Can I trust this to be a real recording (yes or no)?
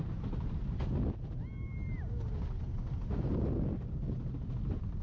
yes